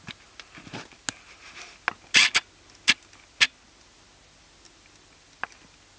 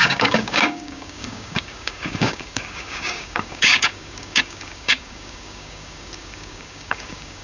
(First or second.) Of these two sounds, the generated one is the second